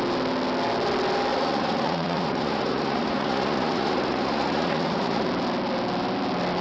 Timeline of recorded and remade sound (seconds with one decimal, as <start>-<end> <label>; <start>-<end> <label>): 0.0-1.3 recorded; 1.3-5.3 remade; 5.3-6.6 recorded